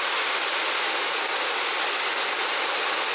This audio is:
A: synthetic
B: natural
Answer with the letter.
B